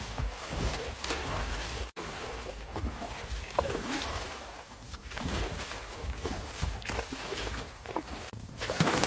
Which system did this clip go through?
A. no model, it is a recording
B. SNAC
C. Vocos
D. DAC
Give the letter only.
D